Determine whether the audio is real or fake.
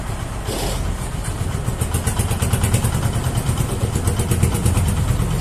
real